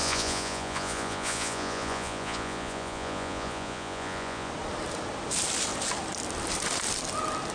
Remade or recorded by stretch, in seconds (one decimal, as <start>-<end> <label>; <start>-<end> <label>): 0.0-4.5 remade; 4.5-7.5 recorded